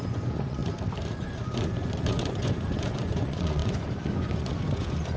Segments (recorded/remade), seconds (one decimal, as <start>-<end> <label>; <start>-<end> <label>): 0.0-0.6 remade; 0.6-1.2 recorded; 1.2-5.2 remade